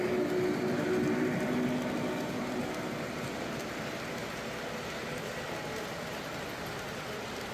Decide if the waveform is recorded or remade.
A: recorded